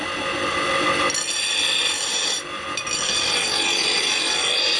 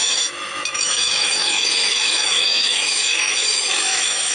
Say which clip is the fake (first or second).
second